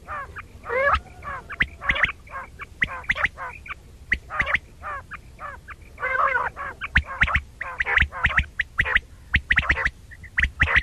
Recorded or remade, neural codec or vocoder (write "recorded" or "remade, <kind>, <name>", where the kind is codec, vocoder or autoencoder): recorded